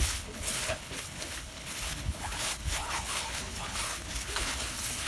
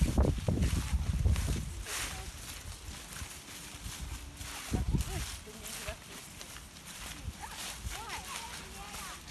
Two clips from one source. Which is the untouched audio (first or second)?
second